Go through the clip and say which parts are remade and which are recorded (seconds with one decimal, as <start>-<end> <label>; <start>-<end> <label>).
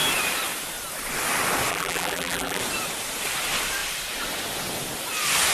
0.0-1.7 recorded; 1.7-2.6 remade; 2.6-5.5 recorded